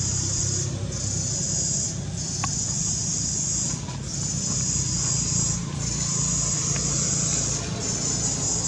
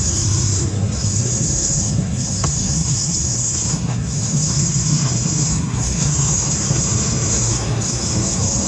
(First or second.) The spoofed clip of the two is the second